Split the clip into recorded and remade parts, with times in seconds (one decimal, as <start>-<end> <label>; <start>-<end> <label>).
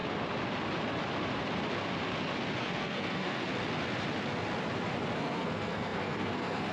0.0-2.6 recorded; 2.6-3.5 remade; 3.5-5.2 recorded; 5.2-6.7 remade